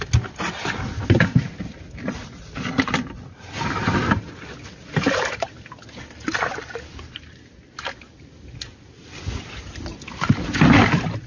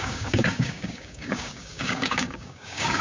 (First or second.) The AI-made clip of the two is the second